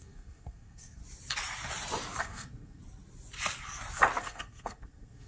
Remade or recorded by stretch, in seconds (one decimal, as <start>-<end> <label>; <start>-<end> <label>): 0.0-1.0 remade; 1.0-2.2 recorded; 2.2-2.8 remade; 2.8-4.2 recorded; 4.2-5.3 remade